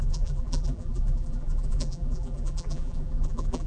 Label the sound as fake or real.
fake